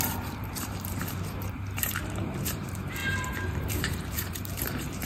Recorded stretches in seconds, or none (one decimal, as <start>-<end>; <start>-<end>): none